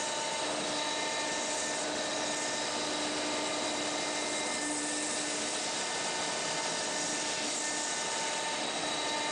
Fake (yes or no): no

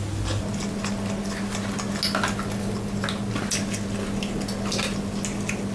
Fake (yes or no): no